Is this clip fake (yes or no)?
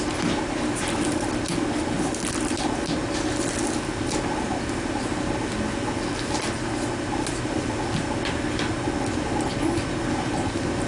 no